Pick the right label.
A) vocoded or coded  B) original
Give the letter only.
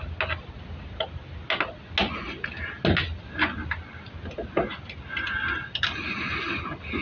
B